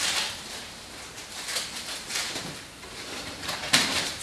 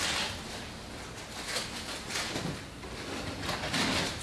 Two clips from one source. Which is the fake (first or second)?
first